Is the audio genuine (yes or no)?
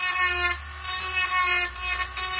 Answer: yes